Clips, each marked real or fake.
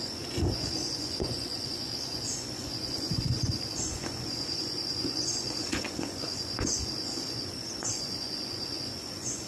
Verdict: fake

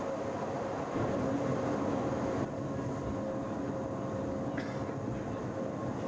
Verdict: real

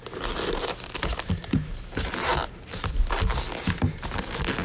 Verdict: real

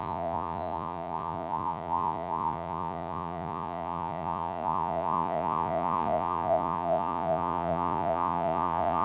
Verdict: fake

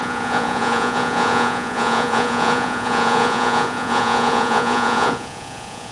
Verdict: fake